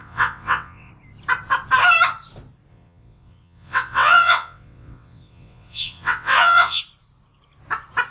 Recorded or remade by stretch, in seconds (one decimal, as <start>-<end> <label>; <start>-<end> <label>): 0.0-0.9 remade; 0.9-2.7 recorded; 2.7-6.8 remade; 6.8-8.1 recorded